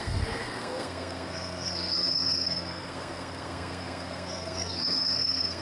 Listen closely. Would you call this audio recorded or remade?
remade